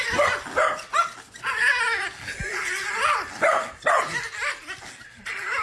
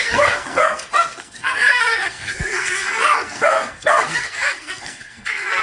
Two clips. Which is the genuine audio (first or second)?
first